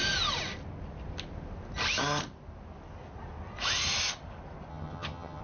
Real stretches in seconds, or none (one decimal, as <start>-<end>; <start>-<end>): 0.0-4.7